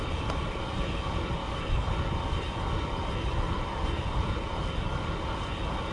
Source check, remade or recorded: remade